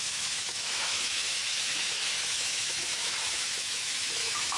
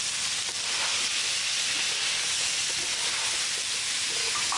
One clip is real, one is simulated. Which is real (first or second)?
second